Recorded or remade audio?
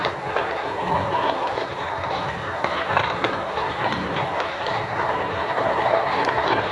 remade